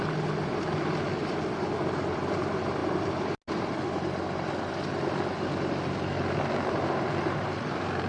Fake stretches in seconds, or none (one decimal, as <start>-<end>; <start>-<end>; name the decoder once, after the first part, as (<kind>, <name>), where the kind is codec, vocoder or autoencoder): none